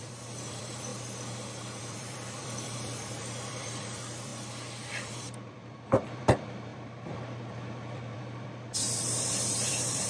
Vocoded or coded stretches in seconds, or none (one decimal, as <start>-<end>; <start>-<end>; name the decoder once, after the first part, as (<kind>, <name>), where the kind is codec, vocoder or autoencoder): 0.0-0.9 (vocoder, BigVGAN v2); 1.8-4.3; 4.9-10.1